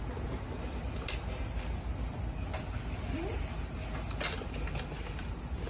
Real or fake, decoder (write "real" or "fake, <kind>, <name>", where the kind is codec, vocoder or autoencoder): real